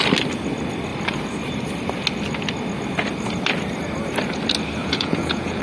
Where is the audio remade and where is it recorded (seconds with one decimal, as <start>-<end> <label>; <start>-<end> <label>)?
0.0-4.8 recorded; 4.8-5.6 remade